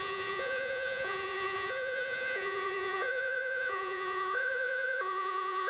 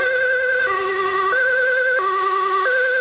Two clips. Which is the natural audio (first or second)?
second